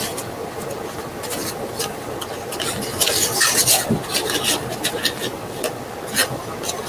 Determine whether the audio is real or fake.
real